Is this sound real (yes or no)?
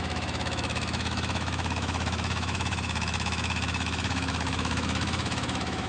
no